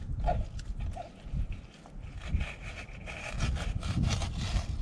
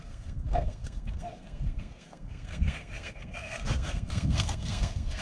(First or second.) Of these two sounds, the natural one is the first